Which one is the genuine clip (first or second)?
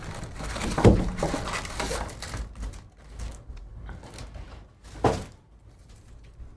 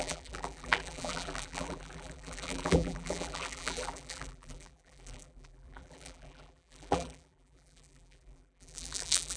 first